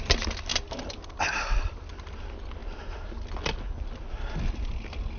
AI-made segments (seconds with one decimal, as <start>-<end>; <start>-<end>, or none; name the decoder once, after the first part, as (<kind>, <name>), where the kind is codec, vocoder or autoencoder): none